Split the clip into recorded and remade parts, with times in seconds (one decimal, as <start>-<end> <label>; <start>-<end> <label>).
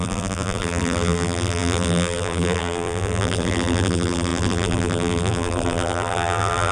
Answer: 0.0-6.7 remade